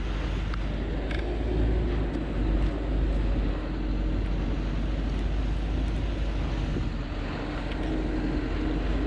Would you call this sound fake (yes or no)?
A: no